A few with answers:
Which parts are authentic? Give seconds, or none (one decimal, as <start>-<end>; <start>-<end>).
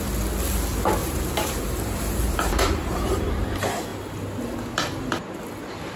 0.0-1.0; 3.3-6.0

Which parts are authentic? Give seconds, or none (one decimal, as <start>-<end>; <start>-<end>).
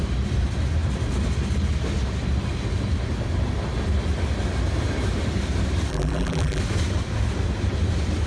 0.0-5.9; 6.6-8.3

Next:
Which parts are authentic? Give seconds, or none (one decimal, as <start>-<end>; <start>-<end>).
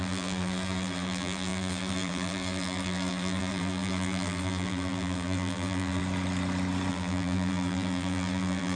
6.0-6.9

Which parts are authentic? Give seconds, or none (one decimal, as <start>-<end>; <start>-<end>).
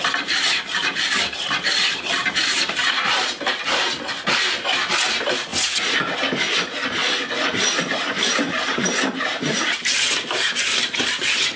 5.5-7.6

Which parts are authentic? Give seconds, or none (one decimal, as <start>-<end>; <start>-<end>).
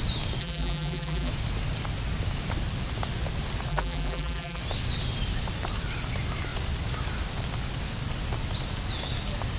0.0-0.4; 1.3-3.7; 4.6-9.6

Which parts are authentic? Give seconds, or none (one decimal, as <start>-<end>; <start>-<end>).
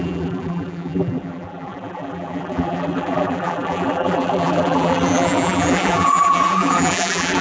none